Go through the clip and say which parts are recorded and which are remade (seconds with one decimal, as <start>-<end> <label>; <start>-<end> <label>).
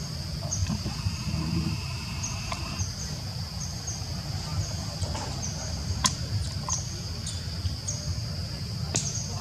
0.0-0.6 recorded; 0.6-2.7 remade; 2.7-4.5 recorded; 4.5-6.8 remade; 6.8-9.4 recorded